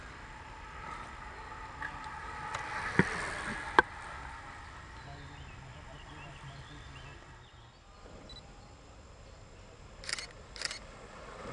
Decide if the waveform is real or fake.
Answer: real